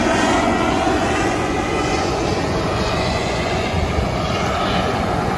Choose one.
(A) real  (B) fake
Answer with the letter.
B